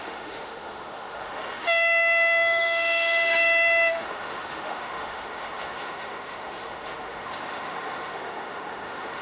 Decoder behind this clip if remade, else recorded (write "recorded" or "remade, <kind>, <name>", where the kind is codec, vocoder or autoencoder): remade, autoencoder, DAC-VAE